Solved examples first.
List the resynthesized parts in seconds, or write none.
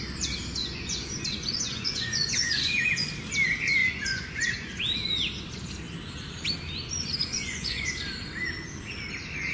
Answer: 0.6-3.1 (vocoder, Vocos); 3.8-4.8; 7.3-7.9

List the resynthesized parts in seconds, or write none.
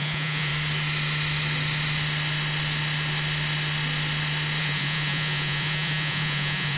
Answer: 0.0-0.5 (vocoder, Vocos); 4.6-6.8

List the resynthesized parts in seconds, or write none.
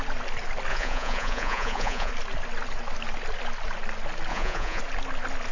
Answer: 0.7-2.1 (vocoder, Vocos); 4.3-4.8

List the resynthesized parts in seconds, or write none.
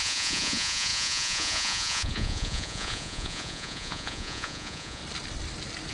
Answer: 0.0-5.0 (vocoder, Vocos)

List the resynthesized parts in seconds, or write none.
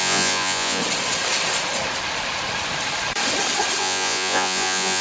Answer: 0.0-0.8 (vocoder, Vocos); 3.8-5.0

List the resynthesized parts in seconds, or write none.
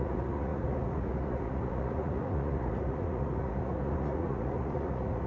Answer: 0.0-5.3 (vocoder, Vocos)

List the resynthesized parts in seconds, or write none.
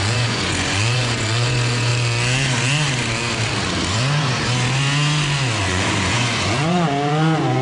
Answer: 0.0-1.9 (vocoder, Vocos); 5.7-7.6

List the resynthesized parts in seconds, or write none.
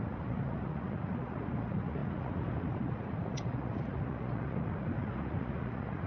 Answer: 0.0-6.1 (vocoder, Vocos)